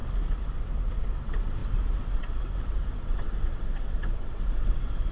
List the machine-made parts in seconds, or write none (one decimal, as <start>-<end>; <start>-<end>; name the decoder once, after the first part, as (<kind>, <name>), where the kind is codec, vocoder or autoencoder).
0.7-5.1 (vocoder, WaveNeXt)